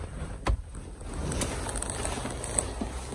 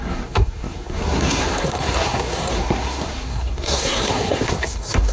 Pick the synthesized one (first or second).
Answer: second